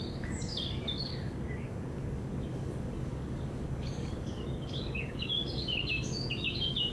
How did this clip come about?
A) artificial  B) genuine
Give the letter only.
A